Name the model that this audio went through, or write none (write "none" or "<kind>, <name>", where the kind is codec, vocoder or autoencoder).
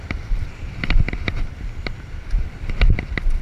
none